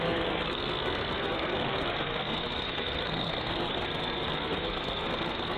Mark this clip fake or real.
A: fake